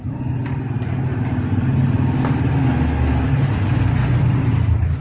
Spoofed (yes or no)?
no